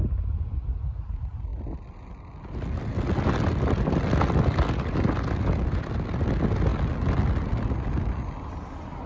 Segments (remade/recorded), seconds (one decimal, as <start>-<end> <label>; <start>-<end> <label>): 0.0-9.1 recorded